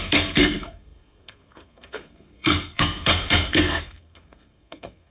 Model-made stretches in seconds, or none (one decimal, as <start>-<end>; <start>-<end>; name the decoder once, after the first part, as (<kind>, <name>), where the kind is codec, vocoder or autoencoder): 0.0-5.1 (codec, SNAC)